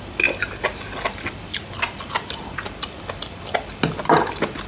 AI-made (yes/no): no